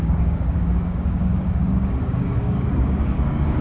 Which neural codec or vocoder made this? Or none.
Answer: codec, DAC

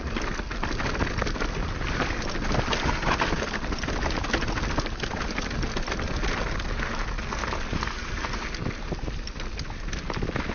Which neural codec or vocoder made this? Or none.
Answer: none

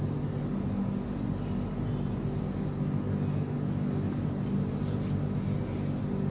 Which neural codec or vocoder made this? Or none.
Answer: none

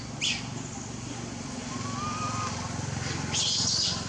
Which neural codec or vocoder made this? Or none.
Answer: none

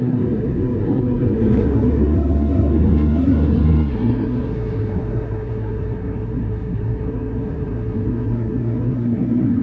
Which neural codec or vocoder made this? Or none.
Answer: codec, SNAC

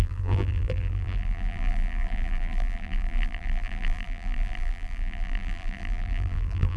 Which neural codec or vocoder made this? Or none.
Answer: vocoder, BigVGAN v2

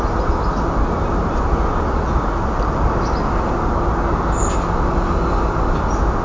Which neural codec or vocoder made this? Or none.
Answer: none